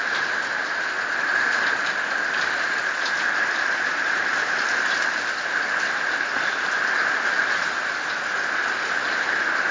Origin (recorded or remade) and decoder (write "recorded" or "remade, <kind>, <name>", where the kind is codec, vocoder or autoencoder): recorded